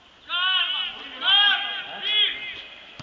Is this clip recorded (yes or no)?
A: yes